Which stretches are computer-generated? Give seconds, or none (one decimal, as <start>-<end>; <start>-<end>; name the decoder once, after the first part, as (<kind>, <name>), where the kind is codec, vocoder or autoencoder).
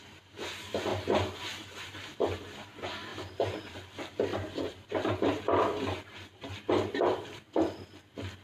3.1-3.9 (vocoder, BigVGAN v2); 4.3-6.7